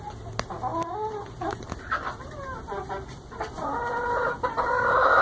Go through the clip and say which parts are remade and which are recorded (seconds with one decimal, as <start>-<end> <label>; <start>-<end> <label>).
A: 0.0-5.2 recorded